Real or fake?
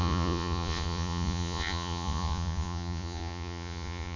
fake